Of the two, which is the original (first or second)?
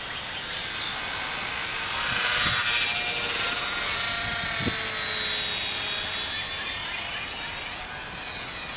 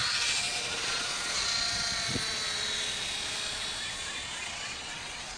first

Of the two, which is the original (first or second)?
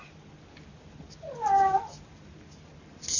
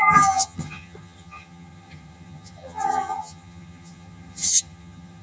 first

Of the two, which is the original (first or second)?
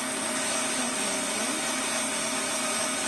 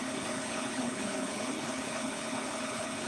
first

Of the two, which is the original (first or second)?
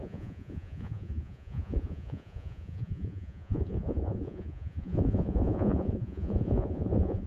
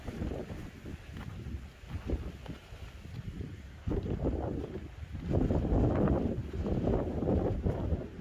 second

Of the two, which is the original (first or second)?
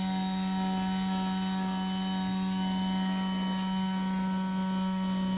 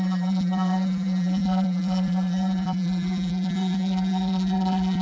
first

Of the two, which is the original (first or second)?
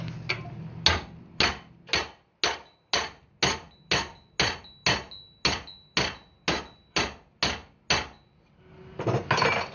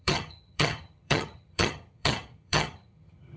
first